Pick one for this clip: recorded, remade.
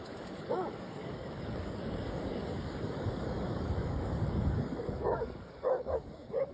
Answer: remade